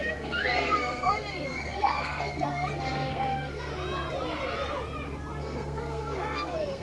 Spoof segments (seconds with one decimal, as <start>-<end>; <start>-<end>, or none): 0.0-3.7; 5.4-6.8